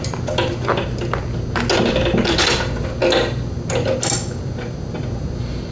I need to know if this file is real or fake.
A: real